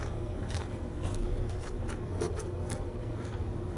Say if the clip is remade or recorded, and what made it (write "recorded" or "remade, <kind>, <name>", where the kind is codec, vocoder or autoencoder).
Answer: remade, codec, SNAC